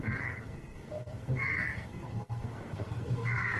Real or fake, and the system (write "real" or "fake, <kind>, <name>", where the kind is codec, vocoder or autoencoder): fake, codec, SNAC